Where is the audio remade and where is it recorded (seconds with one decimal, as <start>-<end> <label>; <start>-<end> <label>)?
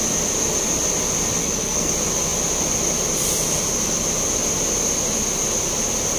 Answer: 0.0-1.4 recorded; 1.4-1.9 remade; 1.9-6.2 recorded